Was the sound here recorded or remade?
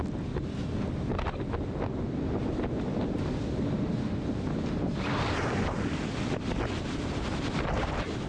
recorded